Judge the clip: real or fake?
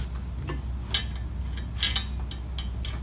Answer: real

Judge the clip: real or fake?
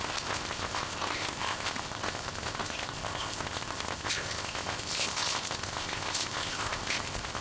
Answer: fake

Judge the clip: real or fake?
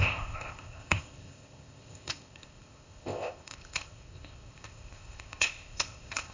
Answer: fake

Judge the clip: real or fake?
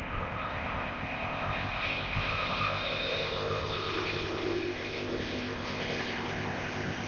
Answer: fake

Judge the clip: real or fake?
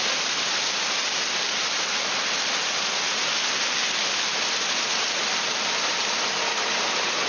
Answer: real